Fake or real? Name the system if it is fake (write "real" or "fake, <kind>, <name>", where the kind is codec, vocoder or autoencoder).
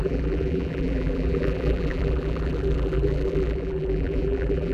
fake, vocoder, BigVGAN v2